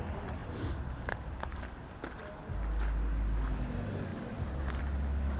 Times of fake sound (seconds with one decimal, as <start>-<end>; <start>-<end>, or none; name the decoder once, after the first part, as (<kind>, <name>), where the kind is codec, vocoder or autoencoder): 0.4-1.6 (vocoder, BigVGAN v2); 4.1-4.8

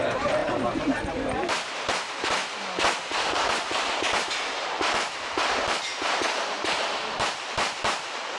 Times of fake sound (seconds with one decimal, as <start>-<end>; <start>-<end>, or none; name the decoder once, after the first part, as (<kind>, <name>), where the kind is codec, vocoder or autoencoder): 0.0-2.4 (vocoder, BigVGAN v2); 3.3-8.4

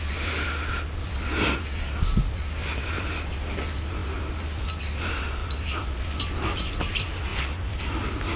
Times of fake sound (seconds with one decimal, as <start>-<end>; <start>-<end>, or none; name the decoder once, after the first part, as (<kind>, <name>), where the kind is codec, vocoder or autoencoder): none

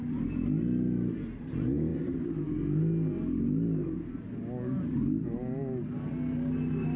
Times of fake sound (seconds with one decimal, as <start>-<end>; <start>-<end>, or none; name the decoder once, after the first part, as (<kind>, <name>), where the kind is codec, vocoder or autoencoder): none